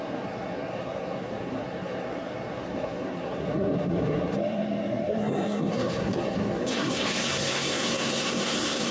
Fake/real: fake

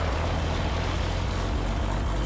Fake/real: real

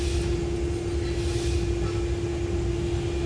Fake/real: real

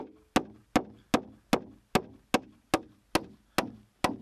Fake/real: real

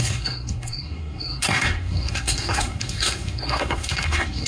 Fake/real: fake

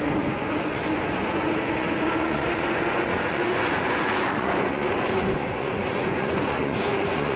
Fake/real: fake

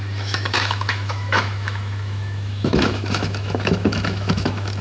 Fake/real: fake